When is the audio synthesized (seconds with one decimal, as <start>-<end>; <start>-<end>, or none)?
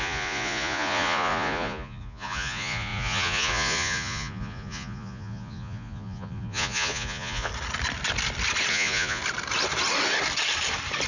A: 0.0-7.5; 8.7-9.2